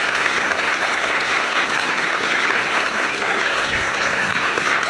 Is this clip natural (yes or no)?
no